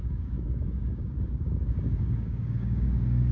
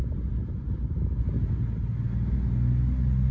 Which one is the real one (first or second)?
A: second